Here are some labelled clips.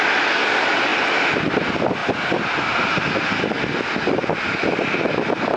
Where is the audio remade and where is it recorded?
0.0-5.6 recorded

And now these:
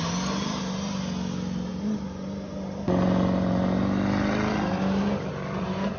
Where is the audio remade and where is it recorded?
0.0-6.0 recorded

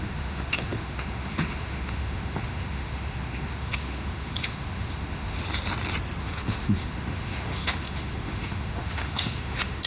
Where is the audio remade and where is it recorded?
0.0-5.4 remade; 5.4-6.2 recorded; 6.2-9.9 remade

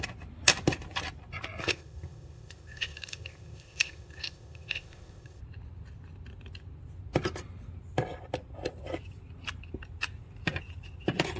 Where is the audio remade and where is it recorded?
0.0-1.6 recorded; 1.6-5.4 remade; 5.4-11.4 recorded

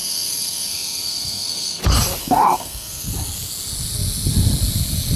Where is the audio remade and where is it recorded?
0.0-1.8 remade; 1.8-2.2 recorded; 2.2-3.1 remade; 3.1-5.2 recorded